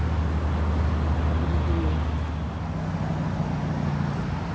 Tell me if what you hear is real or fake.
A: real